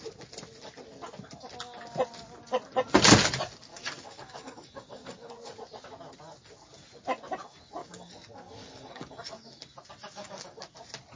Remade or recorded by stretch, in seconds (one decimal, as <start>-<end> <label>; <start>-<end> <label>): 0.0-3.7 recorded; 3.7-5.3 remade; 5.3-7.8 recorded; 7.8-9.6 remade; 9.6-10.0 recorded; 10.0-10.6 remade; 10.6-11.2 recorded